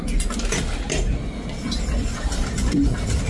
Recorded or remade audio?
recorded